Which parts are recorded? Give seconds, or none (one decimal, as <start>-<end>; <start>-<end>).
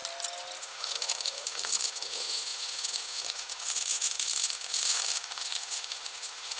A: 0.0-0.6